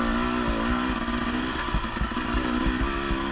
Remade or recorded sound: recorded